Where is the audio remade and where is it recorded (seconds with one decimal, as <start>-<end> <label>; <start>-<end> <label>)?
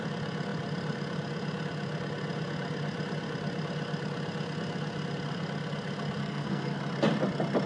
0.0-6.2 recorded; 6.2-6.8 remade; 6.8-7.7 recorded